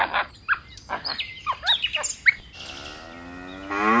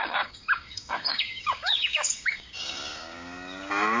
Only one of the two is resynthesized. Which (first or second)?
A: second